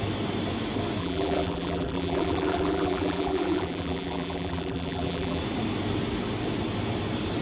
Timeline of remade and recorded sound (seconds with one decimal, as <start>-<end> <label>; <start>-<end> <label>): 0.0-1.0 recorded; 1.0-5.4 remade; 5.4-7.4 recorded